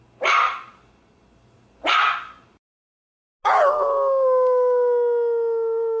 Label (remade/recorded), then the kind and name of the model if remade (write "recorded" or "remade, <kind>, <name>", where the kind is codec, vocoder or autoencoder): recorded